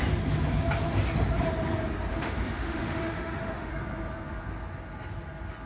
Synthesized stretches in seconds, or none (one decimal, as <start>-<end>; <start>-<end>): 2.1-3.7